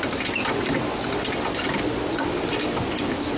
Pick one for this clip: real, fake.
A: real